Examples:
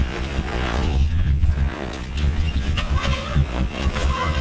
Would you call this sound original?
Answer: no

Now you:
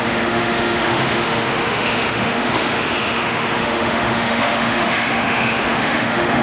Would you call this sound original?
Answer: no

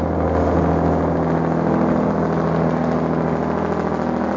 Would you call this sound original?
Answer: yes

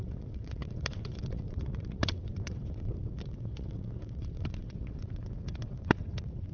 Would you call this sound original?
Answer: no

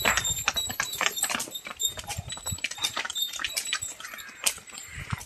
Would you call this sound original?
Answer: no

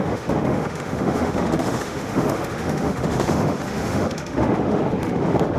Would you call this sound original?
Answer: no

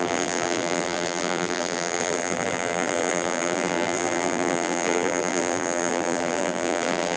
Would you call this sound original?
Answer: no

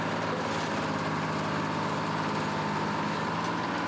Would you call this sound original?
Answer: yes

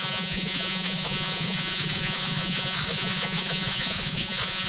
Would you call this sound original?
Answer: no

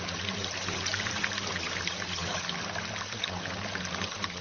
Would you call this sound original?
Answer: yes